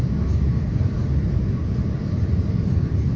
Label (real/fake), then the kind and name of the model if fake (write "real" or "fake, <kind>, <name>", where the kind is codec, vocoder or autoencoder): real